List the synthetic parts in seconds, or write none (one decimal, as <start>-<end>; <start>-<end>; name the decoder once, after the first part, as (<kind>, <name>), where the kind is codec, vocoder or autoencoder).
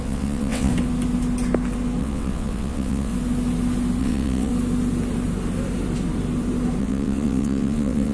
0.0-0.7 (vocoder, WaveNeXt); 2.0-3.1; 4.0-4.5; 6.8-8.1